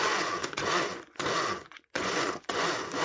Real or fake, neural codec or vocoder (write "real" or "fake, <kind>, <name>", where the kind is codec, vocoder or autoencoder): fake, vocoder, Vocos